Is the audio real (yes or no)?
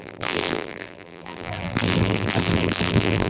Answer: no